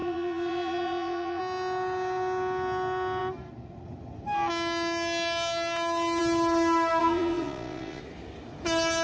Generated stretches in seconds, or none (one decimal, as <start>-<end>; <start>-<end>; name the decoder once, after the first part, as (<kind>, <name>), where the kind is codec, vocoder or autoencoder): 0.0-1.4 (vocoder, Vocos); 7.0-8.0